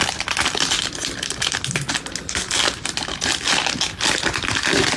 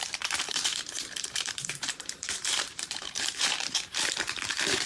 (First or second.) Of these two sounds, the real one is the first